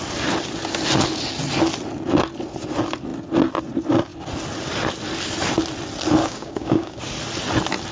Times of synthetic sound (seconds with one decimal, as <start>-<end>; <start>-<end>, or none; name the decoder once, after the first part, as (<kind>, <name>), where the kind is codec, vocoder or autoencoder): 6.2-7.0 (codec, DAC)